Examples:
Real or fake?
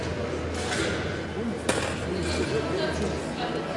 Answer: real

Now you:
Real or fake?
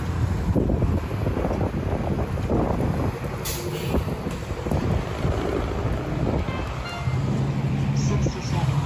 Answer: real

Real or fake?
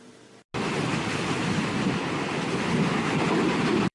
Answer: real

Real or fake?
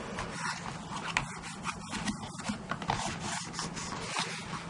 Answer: real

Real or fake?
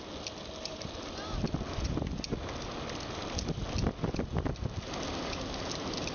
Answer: real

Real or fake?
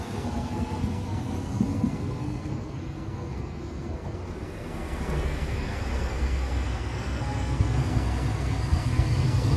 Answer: fake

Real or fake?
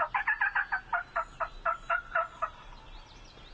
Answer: real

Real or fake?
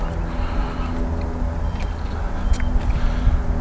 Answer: real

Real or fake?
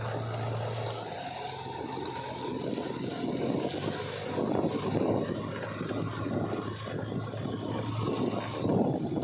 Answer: real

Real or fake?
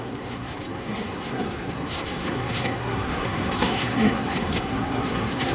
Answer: fake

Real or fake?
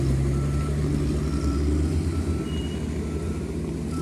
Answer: real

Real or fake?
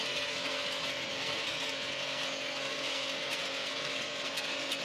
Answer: fake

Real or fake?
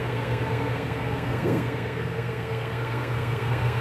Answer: fake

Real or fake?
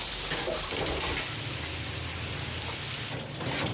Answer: real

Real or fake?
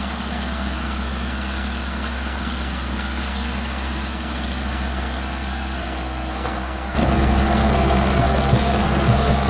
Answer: fake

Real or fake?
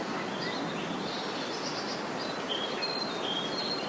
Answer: real